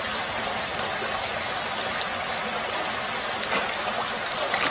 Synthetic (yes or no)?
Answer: no